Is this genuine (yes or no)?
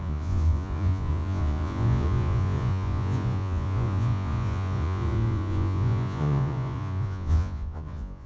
no